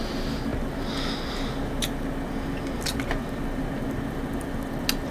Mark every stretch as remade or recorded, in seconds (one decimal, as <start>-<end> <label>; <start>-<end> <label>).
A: 0.0-5.1 recorded